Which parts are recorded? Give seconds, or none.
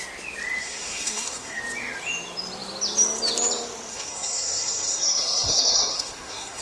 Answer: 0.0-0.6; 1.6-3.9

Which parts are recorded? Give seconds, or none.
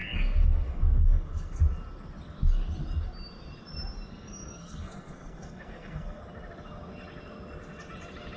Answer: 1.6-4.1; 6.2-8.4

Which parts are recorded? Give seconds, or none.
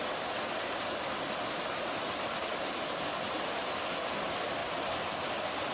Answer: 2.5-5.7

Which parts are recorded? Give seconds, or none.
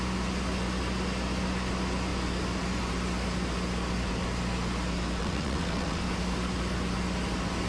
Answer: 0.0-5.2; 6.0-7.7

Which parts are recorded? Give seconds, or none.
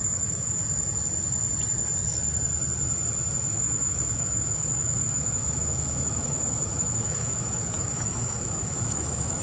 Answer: 0.6-3.5